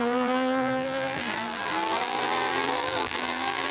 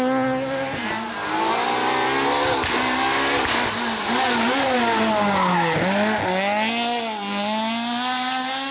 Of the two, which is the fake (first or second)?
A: first